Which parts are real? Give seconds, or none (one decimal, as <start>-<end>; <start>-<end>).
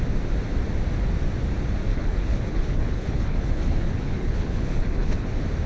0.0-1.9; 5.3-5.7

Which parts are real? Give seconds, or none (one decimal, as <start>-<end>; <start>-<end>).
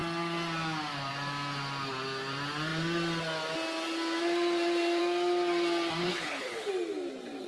0.0-6.0; 6.7-7.5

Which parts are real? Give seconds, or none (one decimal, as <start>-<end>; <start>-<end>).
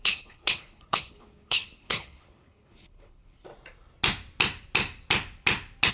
3.5-5.9